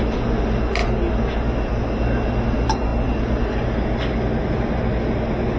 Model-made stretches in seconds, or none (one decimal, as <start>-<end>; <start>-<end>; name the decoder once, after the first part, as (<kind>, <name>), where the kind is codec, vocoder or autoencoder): none